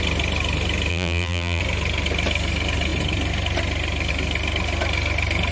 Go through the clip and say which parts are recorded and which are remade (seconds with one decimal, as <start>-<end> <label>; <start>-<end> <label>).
0.0-0.9 recorded; 0.9-1.6 remade; 1.6-5.5 recorded